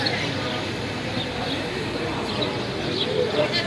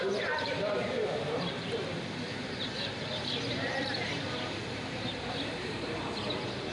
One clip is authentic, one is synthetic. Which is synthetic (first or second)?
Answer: second